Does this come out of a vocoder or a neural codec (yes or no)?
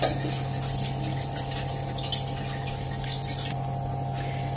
no